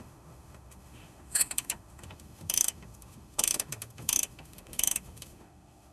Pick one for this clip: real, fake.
fake